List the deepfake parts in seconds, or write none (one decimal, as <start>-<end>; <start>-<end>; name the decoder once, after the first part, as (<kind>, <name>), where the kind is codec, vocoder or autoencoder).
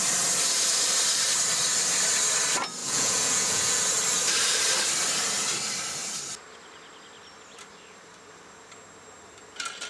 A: 2.8-3.8 (vocoder, Vocos)